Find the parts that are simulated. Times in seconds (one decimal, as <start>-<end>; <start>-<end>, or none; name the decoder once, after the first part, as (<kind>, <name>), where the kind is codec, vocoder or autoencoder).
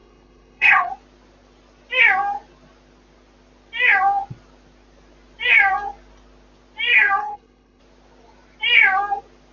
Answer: 0.0-0.9 (codec, HILCodec); 7.2-7.8